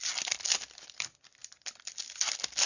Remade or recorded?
recorded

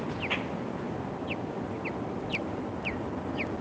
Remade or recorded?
recorded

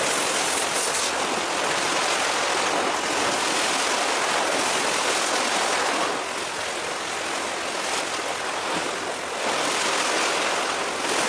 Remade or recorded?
recorded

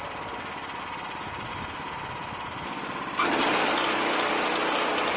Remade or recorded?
recorded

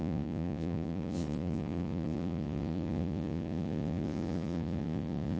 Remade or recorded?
remade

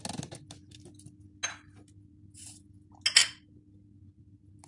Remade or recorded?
recorded